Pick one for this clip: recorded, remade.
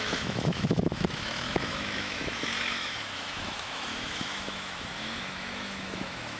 remade